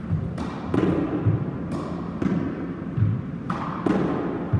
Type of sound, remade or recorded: recorded